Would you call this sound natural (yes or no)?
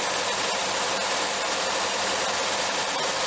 yes